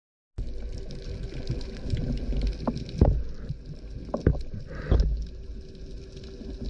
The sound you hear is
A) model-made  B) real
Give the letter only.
B